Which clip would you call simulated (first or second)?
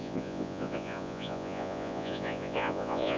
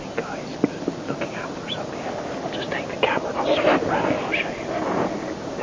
first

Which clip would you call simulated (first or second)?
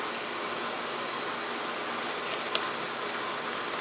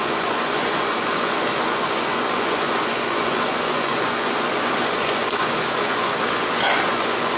second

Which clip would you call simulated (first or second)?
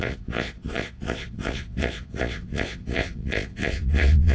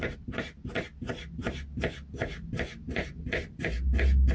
first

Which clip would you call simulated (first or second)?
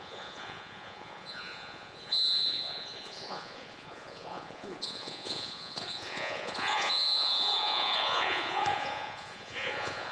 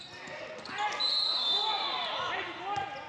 first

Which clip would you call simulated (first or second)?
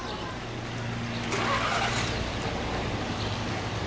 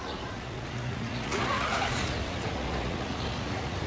second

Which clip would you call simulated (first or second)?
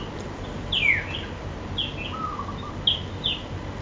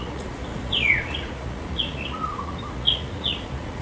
second